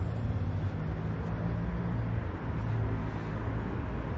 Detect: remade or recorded recorded